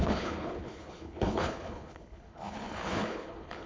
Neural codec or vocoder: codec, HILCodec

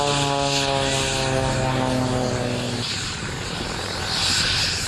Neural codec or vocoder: none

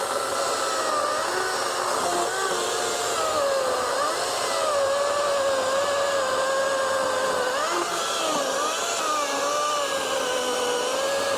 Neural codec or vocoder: none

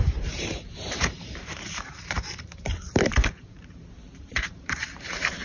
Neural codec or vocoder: vocoder, BigVGAN v2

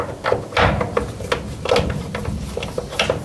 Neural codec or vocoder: none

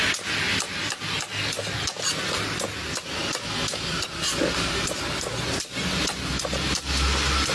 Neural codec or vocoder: none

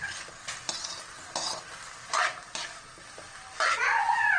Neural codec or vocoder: none